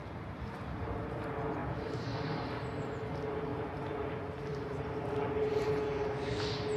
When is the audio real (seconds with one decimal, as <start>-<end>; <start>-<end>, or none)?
0.0-1.6; 2.5-4.5; 5.7-6.8